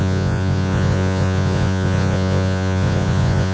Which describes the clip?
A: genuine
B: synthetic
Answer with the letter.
B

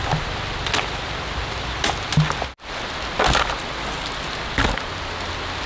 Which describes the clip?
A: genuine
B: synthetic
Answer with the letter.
A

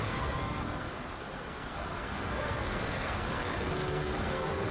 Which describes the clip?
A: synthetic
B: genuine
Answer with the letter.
A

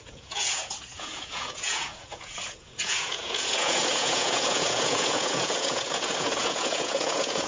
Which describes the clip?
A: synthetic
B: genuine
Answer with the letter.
A